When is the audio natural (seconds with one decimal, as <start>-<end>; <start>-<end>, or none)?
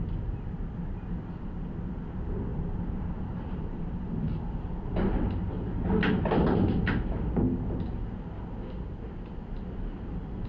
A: 0.0-2.5; 4.5-10.5